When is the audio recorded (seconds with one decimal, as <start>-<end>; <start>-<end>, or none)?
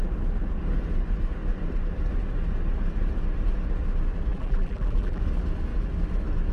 0.0-4.3; 5.2-6.5